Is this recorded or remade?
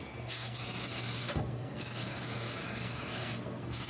remade